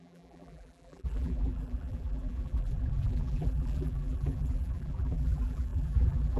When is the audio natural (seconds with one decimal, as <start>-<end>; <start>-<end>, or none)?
none